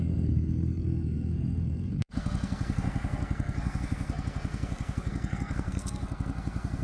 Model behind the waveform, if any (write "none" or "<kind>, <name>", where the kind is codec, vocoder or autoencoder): codec, SNAC